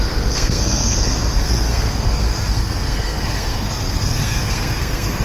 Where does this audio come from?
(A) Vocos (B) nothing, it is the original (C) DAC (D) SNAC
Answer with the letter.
D